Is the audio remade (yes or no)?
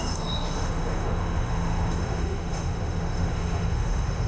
yes